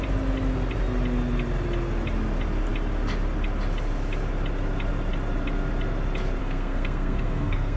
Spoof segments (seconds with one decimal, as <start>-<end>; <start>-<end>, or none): 6.4-7.8

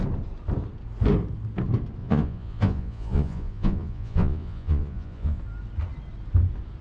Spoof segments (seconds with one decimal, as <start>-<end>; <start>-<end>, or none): 2.0-5.4

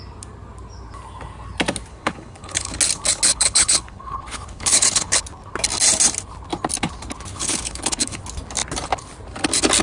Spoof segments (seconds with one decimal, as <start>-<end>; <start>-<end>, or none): 1.9-2.7; 3.3-5.2; 7.3-8.2

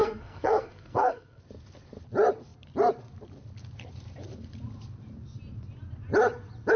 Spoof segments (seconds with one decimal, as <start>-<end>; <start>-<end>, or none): 0.0-1.4

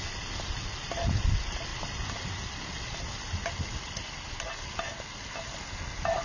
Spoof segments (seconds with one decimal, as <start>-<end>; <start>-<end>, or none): none

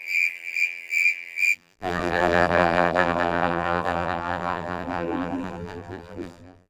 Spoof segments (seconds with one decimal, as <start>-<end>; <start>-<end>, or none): 0.0-6.7

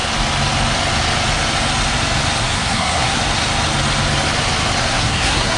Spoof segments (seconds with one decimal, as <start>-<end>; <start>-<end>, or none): 2.4-3.2; 4.8-5.6